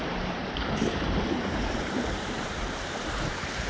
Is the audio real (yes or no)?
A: no